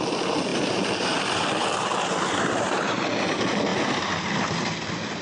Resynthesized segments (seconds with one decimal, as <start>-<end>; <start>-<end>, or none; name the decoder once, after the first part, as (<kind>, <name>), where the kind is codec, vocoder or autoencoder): none